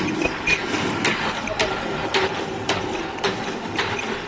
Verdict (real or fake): real